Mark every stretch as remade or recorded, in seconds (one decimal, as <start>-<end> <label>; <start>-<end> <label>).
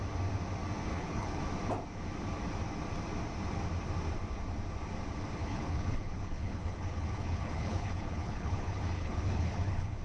0.0-0.9 recorded; 0.9-1.4 remade; 1.4-5.4 recorded; 5.4-10.0 remade